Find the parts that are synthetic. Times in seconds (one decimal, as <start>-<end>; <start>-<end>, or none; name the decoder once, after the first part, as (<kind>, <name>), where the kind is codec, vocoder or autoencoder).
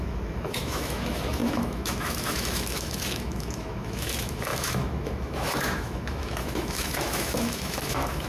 0.0-8.3 (autoencoder, DAC-VAE)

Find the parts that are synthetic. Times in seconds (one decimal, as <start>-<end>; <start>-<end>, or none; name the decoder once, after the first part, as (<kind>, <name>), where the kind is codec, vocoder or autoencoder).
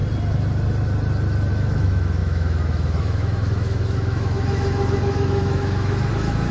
1.5-6.5 (autoencoder, DAC-VAE)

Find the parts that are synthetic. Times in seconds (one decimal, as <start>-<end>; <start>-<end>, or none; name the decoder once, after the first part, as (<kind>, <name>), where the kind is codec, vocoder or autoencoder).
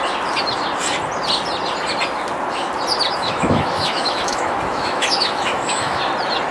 3.2-6.0 (autoencoder, DAC-VAE)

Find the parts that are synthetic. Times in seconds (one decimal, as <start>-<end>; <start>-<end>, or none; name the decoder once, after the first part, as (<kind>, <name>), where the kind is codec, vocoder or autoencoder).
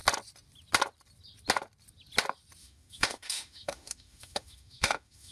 2.6-5.3 (autoencoder, DAC-VAE)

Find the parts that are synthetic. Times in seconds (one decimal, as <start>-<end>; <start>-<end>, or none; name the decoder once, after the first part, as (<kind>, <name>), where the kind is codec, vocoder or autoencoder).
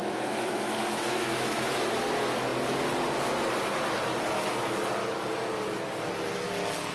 0.0-1.7 (autoencoder, DAC-VAE)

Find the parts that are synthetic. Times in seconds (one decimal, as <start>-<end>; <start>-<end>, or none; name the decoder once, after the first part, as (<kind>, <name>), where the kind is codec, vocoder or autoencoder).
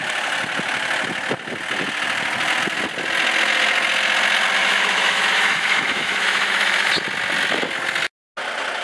4.6-6.9 (autoencoder, DAC-VAE)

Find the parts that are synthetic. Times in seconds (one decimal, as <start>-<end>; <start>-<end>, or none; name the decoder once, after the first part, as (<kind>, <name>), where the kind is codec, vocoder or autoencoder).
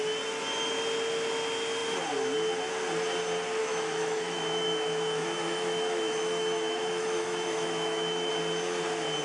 3.6-8.3 (autoencoder, DAC-VAE)